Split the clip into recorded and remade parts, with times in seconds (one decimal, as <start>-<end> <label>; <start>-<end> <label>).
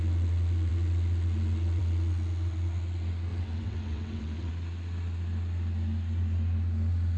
0.0-3.3 recorded; 3.3-4.5 remade; 4.5-7.2 recorded